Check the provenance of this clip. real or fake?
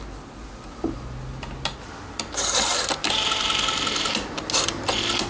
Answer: real